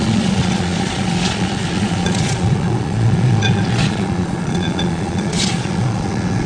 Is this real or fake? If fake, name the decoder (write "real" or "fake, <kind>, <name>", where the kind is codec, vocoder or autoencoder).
fake, vocoder, Vocos